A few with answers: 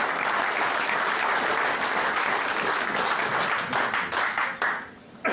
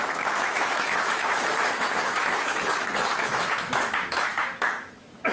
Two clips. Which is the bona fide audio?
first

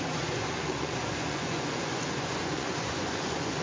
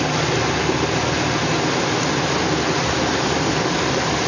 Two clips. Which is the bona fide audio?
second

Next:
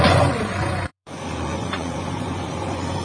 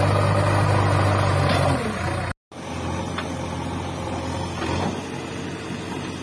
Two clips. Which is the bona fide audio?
second